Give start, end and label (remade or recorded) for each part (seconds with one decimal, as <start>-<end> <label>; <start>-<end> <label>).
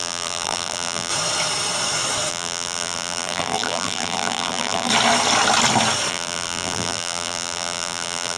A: 0.0-1.1 remade; 1.1-2.3 recorded; 2.3-4.9 remade; 4.9-6.1 recorded; 6.1-8.4 remade